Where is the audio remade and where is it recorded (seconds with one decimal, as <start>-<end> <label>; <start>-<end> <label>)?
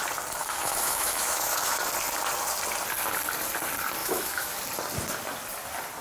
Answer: 0.0-0.4 recorded; 0.4-1.8 remade; 1.8-4.0 recorded; 4.0-4.6 remade; 4.6-6.0 recorded